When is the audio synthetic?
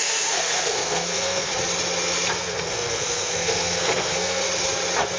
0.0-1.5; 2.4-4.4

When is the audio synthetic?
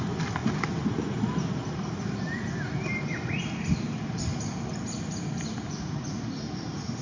none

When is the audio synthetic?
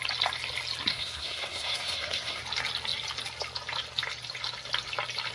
0.9-2.4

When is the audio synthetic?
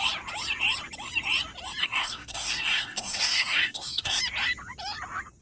1.8-4.2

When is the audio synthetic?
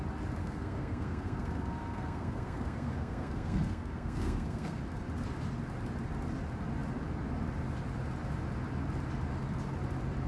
0.4-4.8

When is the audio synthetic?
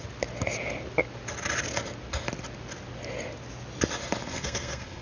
4.3-5.0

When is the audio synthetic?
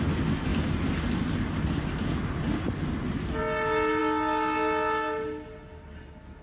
none